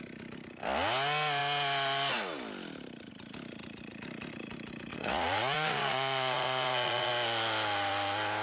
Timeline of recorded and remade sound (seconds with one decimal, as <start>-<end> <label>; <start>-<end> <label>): 0.0-4.9 recorded; 4.9-7.1 remade; 7.1-8.4 recorded